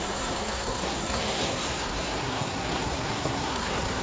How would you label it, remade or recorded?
remade